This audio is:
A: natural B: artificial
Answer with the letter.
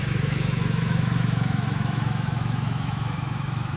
B